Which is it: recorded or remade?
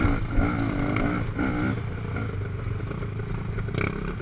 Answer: recorded